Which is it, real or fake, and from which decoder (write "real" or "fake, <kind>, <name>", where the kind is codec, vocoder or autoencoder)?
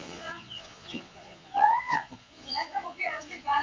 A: fake, vocoder, Vocos